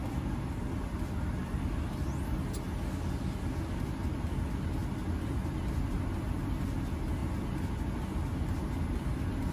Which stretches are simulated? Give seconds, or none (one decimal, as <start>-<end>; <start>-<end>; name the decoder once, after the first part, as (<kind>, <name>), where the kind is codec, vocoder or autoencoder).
none